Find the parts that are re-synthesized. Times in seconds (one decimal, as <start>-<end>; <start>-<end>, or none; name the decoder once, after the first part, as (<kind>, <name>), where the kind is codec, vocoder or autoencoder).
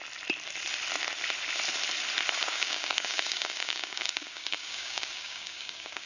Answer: 2.4-6.1 (codec, DAC)